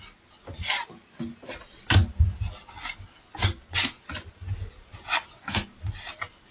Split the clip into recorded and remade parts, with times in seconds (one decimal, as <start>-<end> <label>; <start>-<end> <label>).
0.0-6.5 recorded